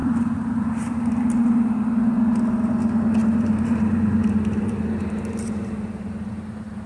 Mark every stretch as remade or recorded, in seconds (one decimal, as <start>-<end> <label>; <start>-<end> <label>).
0.0-1.2 remade; 1.2-3.2 recorded; 3.2-6.1 remade; 6.1-6.9 recorded